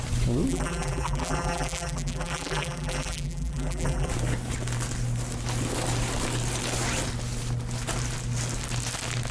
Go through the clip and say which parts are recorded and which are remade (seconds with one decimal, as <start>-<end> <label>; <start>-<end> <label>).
0.0-0.5 recorded; 0.5-4.1 remade; 4.1-9.3 recorded